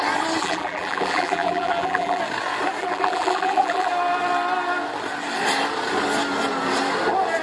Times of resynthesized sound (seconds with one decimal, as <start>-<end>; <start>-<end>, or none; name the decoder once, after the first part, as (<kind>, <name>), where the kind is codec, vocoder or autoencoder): 0.4-2.2 (vocoder, BigVGAN v2); 2.8-3.9